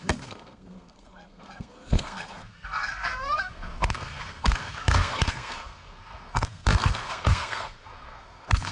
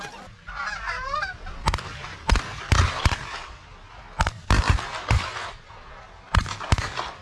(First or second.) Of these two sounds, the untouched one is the second